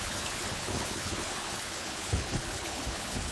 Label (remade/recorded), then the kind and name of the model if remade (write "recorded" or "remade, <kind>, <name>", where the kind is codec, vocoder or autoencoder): remade, codec, HILCodec